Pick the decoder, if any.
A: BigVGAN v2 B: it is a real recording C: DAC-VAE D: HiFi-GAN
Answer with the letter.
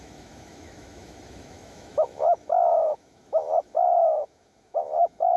C